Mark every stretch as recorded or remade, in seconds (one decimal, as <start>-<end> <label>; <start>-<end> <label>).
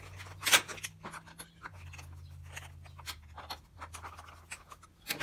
0.0-5.2 recorded